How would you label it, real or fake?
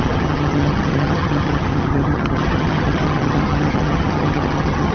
fake